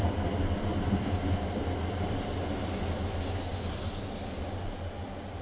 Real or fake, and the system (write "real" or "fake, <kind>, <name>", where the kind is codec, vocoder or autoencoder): real